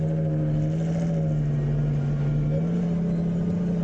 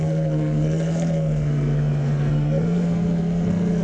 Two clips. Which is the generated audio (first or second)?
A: second